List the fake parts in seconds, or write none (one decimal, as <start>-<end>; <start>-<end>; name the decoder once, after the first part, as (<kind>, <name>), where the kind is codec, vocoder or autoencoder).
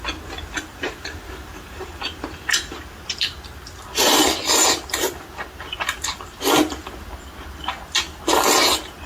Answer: 0.7-3.0 (vocoder, BigVGAN v2)